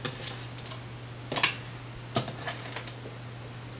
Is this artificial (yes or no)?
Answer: no